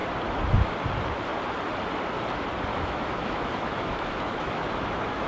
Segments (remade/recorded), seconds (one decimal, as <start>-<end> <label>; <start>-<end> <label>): 0.0-2.7 recorded; 2.7-5.3 remade